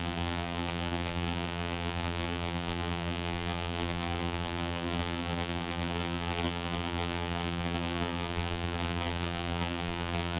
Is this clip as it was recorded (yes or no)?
no